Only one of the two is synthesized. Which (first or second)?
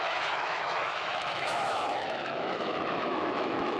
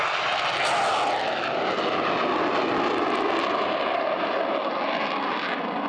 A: first